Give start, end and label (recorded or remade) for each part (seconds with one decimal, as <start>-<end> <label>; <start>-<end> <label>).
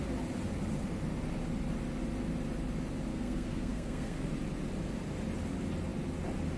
0.0-3.1 recorded; 3.1-4.3 remade; 4.3-6.6 recorded